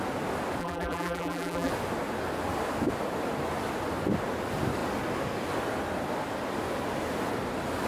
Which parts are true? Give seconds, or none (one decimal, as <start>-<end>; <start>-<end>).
0.0-0.6; 1.7-7.9

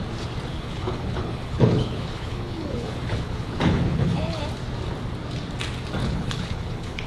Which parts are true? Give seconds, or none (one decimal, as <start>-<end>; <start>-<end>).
0.0-0.5; 4.4-6.0

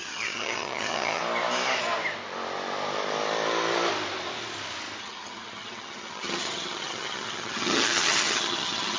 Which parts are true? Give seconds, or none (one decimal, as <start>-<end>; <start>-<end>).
1.2-5.0

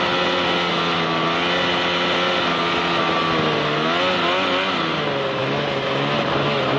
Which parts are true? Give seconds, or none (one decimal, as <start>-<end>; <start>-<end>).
0.0-6.8

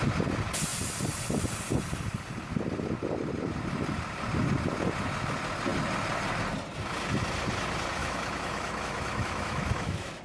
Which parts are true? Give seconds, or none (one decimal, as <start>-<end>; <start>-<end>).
0.0-8.0

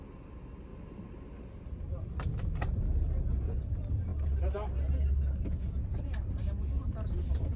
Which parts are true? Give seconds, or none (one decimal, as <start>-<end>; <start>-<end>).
0.0-0.7; 2.8-7.6

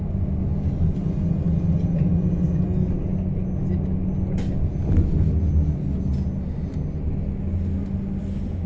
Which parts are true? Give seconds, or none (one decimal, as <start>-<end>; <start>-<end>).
0.0-8.7